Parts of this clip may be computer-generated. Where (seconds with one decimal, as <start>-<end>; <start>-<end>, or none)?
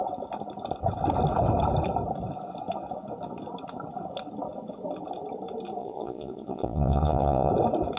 5.8-7.5